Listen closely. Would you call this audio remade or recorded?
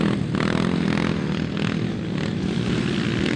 recorded